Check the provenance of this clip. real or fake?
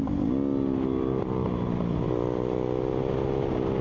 real